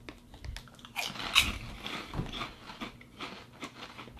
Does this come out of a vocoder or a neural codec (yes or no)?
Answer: no